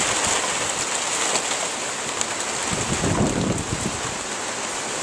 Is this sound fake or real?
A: real